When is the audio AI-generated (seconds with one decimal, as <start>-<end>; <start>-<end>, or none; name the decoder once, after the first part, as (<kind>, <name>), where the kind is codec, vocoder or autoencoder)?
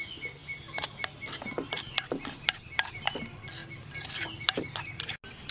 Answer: none